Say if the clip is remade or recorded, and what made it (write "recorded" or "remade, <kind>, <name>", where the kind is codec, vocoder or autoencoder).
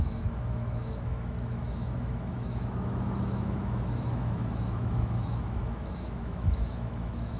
remade, autoencoder, DAC-VAE